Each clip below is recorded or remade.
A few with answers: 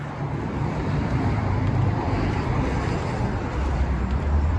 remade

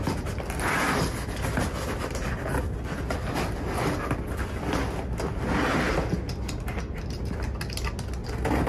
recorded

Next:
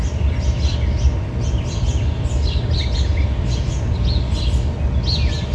recorded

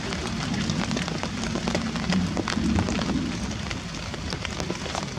recorded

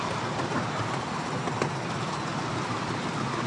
recorded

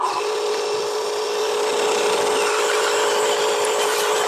recorded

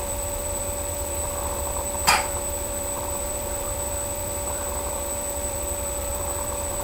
remade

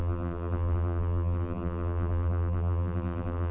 remade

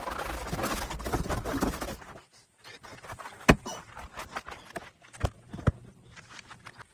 recorded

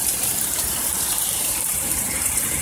remade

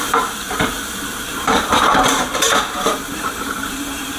remade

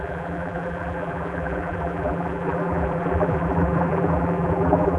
remade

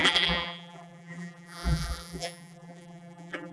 remade